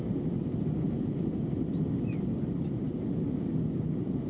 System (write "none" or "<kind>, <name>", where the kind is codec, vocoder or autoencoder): none